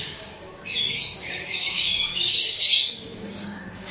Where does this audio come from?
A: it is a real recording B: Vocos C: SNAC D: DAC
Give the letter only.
D